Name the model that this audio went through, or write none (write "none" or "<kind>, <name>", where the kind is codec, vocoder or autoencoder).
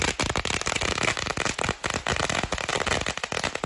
none